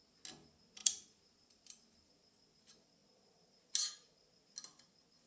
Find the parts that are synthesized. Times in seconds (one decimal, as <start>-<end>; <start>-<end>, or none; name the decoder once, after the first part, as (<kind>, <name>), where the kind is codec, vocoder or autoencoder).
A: 0.8-2.1 (vocoder, BigVGAN v2)